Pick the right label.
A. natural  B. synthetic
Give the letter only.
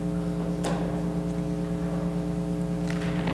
A